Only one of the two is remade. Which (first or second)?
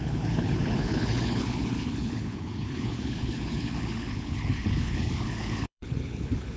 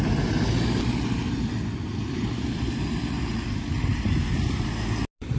first